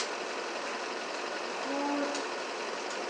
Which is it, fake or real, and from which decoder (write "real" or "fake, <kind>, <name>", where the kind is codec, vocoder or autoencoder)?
real